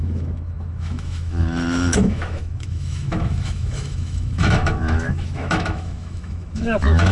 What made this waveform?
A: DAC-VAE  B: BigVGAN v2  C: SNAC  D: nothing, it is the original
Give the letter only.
A